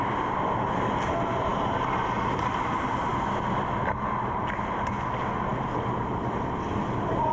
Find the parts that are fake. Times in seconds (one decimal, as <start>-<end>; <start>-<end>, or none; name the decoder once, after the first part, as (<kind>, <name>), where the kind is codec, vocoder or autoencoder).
none

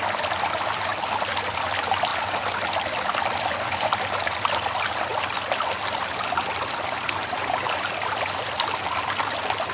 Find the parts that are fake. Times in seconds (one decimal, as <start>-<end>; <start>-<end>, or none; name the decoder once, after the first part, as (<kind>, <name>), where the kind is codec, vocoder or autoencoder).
none